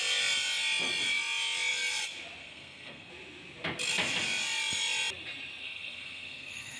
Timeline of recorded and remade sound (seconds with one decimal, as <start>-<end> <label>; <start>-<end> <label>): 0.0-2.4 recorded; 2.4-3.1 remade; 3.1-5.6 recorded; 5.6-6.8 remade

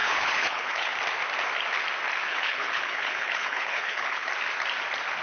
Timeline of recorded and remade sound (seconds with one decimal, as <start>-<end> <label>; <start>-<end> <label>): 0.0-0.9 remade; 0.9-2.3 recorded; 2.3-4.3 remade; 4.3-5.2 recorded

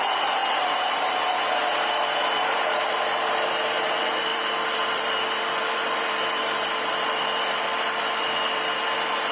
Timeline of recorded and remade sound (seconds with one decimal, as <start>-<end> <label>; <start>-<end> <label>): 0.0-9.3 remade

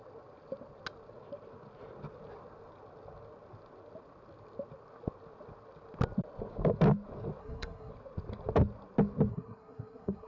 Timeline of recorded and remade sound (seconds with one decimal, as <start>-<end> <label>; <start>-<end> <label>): 0.0-7.4 recorded; 7.4-7.9 remade; 7.9-9.3 recorded; 9.3-10.3 remade

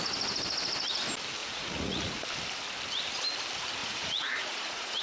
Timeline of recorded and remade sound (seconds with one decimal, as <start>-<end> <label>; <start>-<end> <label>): 0.0-1.4 recorded; 1.4-2.2 remade; 2.2-3.8 recorded; 3.8-5.0 remade